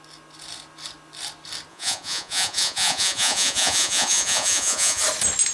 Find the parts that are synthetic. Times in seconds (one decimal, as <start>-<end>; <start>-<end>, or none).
1.7-5.0